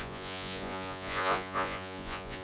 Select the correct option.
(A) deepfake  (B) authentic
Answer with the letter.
A